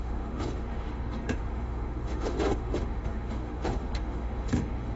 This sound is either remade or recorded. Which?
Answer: remade